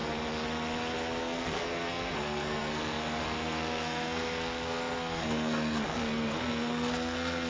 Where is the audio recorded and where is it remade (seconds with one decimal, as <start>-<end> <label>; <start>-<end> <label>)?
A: 0.0-1.2 recorded; 1.2-7.5 remade